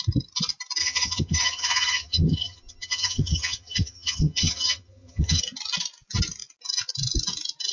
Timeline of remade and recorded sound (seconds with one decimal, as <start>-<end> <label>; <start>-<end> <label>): 0.0-0.8 recorded; 0.8-5.4 remade; 5.4-7.7 recorded